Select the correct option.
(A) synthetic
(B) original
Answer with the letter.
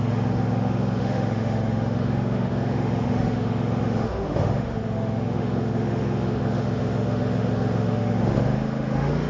A